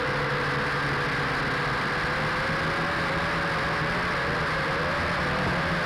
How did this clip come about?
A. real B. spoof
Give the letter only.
A